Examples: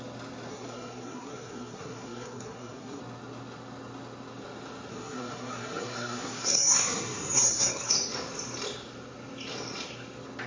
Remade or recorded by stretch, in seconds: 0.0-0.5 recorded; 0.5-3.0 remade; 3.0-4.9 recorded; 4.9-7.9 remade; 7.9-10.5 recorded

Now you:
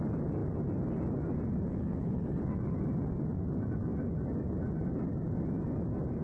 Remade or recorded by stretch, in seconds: 0.0-1.7 recorded; 1.7-2.4 remade; 2.4-6.2 recorded